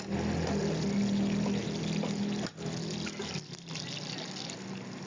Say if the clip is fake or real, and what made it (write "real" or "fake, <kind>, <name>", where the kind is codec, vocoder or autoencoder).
real